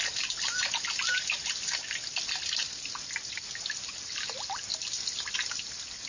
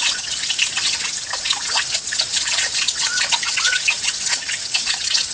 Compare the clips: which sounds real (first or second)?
first